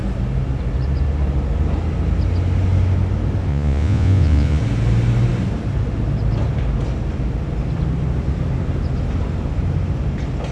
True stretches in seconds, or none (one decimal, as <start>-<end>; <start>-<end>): 0.0-3.5; 4.6-10.5

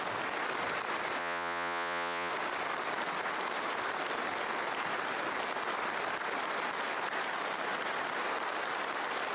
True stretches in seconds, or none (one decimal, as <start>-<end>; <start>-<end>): 0.0-1.2; 2.3-9.3

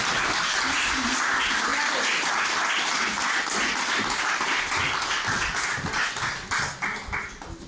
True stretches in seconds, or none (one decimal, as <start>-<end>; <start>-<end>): 0.0-7.7

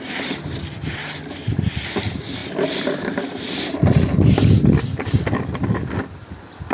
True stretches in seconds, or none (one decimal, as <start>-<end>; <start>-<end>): 0.0-6.7

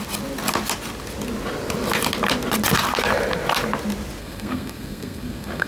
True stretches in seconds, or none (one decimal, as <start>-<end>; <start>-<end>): 0.0-4.2

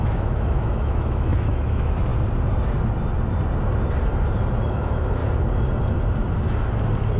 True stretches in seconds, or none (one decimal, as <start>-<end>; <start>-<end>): 2.1-4.7; 5.2-7.2

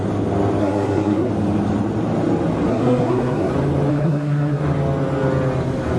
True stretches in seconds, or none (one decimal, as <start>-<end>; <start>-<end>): 0.0-0.6; 1.3-2.7; 3.5-3.9; 4.6-6.0